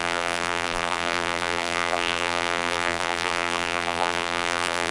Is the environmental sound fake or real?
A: fake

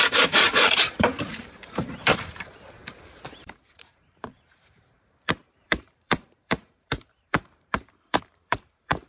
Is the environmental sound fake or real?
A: fake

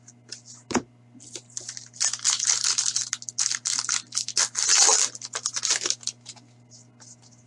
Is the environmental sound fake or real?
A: real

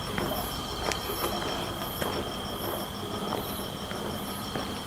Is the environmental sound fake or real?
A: real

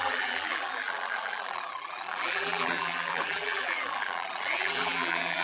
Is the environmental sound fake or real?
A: fake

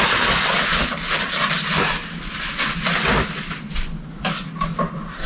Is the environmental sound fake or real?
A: real